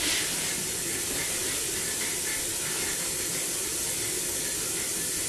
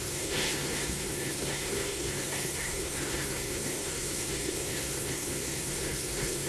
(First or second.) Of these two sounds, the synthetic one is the second